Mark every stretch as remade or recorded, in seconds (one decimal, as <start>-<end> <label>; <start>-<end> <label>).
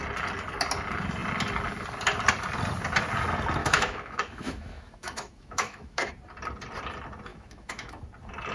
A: 0.0-3.6 recorded; 3.6-6.1 remade; 6.1-7.3 recorded; 7.3-8.0 remade; 8.0-8.5 recorded